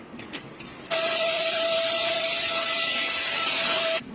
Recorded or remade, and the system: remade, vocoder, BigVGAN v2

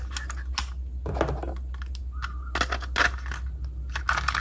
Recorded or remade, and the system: recorded